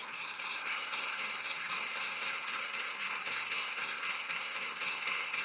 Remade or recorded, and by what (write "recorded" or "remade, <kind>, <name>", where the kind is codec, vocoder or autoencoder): remade, codec, SNAC